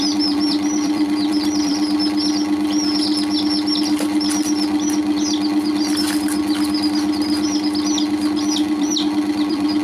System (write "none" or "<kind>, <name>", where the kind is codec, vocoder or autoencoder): vocoder, BigVGAN v2